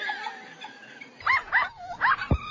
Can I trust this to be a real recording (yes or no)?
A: yes